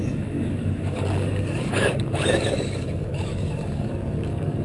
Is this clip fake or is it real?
fake